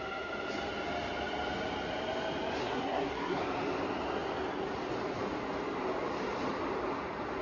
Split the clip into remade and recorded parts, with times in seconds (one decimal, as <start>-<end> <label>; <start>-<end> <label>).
0.0-2.6 recorded; 2.6-3.4 remade; 3.4-7.4 recorded